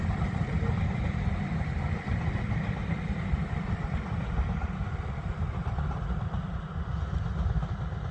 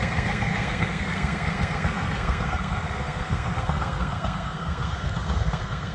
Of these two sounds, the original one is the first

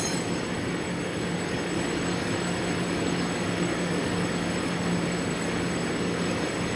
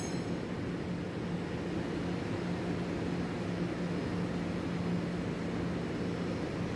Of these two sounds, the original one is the second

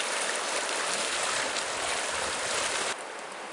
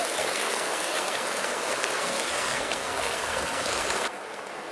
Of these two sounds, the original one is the first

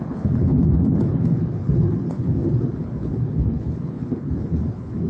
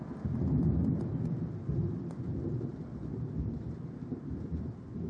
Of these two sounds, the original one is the second